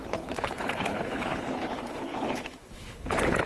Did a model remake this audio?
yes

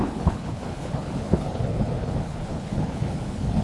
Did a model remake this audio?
yes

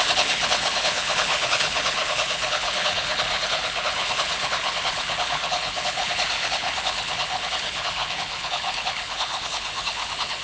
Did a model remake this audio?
yes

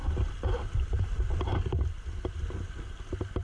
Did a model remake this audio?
no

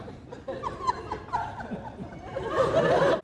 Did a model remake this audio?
no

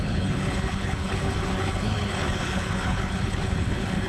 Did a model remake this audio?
yes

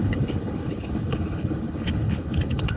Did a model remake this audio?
yes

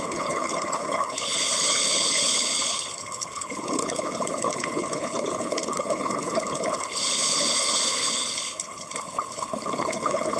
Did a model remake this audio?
yes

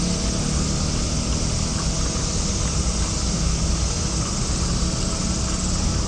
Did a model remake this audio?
no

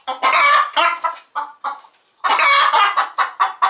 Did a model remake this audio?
no